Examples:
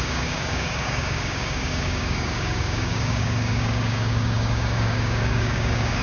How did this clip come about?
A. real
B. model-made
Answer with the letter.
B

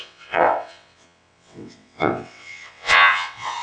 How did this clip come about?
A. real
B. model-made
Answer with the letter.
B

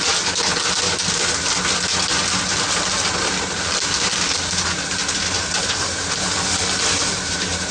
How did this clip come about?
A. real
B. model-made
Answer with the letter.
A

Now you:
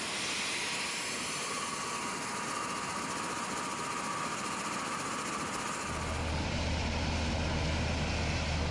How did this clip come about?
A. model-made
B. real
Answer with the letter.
B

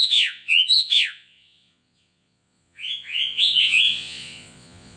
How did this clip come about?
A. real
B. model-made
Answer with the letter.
B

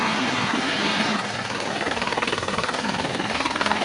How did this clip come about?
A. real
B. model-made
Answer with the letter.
B